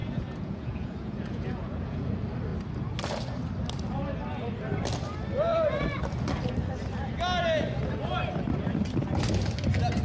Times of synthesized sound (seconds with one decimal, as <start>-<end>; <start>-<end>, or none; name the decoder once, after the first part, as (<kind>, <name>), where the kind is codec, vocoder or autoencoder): 0.0-2.1 (vocoder, Vocos)